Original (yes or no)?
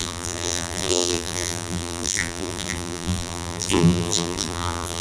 no